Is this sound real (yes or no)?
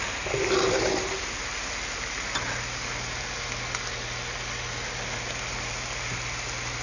yes